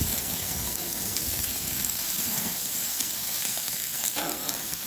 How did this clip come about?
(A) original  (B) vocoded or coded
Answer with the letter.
B